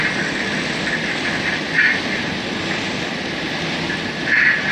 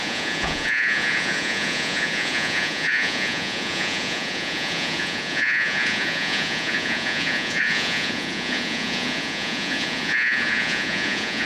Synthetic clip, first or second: second